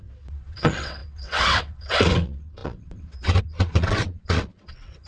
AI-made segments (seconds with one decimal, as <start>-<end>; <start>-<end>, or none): 0.0-5.1